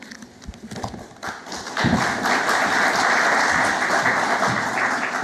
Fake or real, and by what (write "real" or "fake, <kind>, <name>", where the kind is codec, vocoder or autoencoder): real